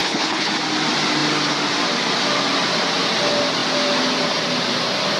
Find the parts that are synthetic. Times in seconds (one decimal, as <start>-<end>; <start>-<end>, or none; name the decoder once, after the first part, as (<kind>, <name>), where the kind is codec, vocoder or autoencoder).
0.0-0.5 (codec, HILCodec)